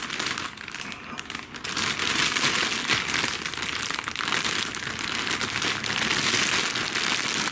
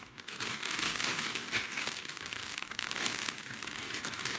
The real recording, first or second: first